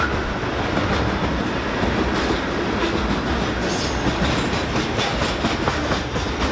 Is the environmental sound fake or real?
real